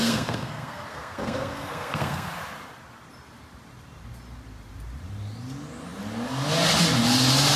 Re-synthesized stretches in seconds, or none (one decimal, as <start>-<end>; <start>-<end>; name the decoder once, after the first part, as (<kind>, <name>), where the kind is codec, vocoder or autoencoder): 0.0-2.3 (codec, SNAC)